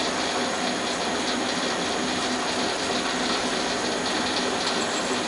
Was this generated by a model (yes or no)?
no